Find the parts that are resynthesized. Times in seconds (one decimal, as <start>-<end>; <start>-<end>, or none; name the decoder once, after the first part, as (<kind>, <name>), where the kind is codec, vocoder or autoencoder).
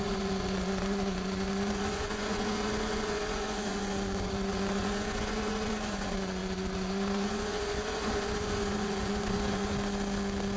0.0-9.7 (vocoder, Vocos)